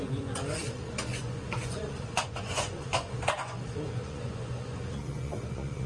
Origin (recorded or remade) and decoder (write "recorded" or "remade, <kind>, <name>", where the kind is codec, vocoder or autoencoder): remade, vocoder, Vocos